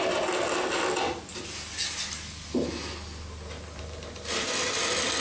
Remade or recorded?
recorded